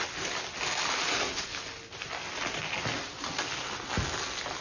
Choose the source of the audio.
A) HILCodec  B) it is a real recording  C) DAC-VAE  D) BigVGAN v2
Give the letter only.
B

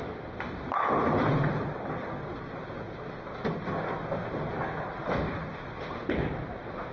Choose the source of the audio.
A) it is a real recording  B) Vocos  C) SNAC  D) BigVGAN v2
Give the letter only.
A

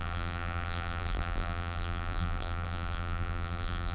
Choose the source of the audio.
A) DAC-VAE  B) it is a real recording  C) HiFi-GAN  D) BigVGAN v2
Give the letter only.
D